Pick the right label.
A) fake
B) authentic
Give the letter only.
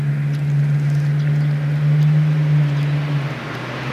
B